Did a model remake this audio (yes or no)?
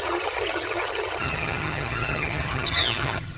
yes